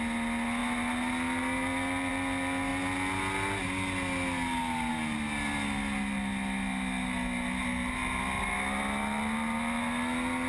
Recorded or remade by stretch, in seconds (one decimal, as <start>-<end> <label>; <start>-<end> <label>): 0.0-10.5 recorded